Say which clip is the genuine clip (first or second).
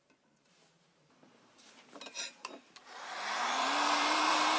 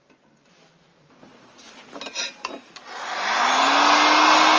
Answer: second